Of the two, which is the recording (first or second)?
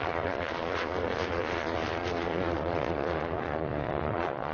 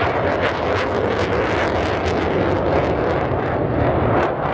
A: second